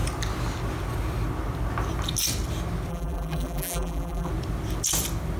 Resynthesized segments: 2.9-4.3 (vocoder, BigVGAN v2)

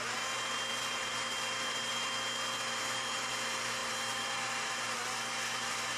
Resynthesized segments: 0.7-1.9 (vocoder, BigVGAN v2); 2.8-3.3; 3.8-4.9

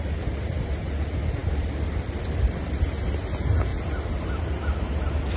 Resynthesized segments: none

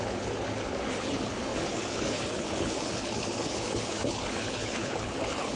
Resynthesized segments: 0.0-5.6 (codec, HILCodec)

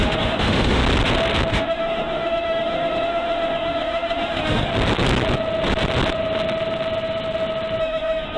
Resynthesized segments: 0.0-0.8 (autoencoder, DAC-VAE); 1.5-4.7; 7.8-8.4